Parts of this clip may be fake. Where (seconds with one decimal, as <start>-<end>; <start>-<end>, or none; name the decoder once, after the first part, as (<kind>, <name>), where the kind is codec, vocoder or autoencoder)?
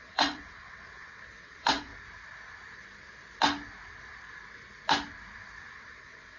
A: 0.0-1.9 (vocoder, WaveNeXt); 5.7-6.4